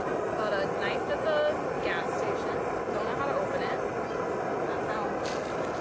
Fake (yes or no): no